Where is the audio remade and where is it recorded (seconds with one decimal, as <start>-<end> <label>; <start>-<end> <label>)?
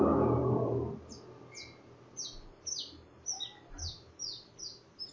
0.0-4.2 recorded; 4.2-5.1 remade